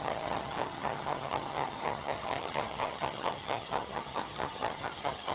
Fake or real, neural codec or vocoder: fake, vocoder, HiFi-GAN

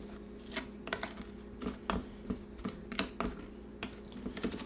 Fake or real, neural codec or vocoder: real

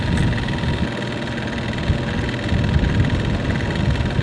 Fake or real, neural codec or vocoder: real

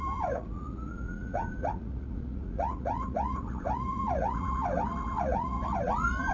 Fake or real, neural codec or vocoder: fake, vocoder, Vocos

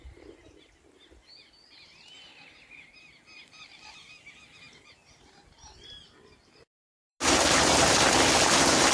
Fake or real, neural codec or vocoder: real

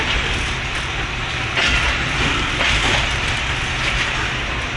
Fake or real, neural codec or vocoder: real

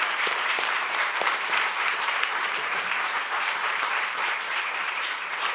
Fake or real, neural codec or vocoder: fake, vocoder, BigVGAN v2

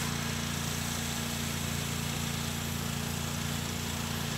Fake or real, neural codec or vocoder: real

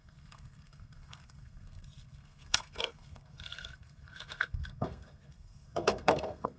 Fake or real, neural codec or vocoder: fake, codec, SNAC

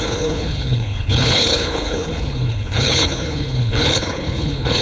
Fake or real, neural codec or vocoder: fake, codec, HILCodec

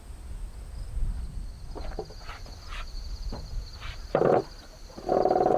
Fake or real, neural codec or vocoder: real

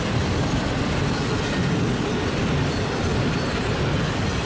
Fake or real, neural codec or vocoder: real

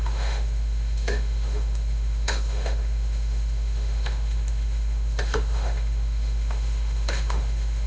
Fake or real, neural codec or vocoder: fake, autoencoder, DAC-VAE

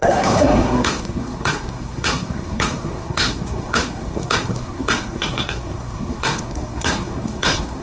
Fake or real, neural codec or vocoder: fake, codec, SNAC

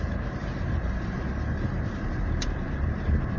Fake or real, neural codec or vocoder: fake, vocoder, BigVGAN v2